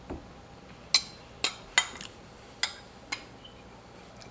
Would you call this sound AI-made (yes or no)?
no